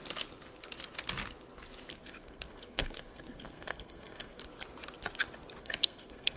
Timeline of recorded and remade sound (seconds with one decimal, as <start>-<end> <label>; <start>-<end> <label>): 0.0-1.9 recorded; 1.9-4.4 remade; 4.4-5.6 recorded; 5.6-6.4 remade